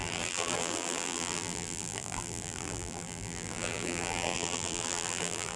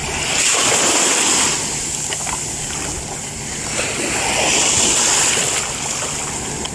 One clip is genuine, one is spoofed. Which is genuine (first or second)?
second